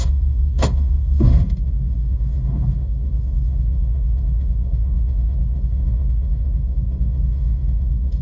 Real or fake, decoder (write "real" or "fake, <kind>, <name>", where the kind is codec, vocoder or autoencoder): fake, autoencoder, DAC-VAE